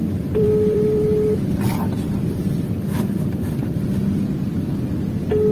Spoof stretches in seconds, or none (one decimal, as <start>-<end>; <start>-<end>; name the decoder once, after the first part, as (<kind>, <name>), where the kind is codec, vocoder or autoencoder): 0.0-3.0 (vocoder, BigVGAN v2)